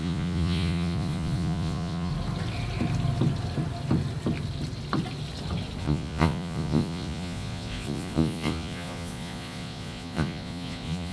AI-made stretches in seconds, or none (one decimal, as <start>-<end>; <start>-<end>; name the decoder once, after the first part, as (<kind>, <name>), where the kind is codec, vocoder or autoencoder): 0.0-2.1 (vocoder, Vocos); 5.8-11.1